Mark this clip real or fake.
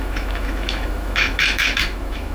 fake